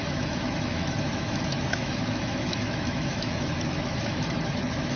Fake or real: fake